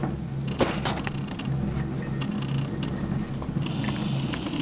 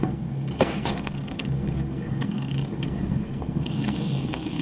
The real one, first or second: first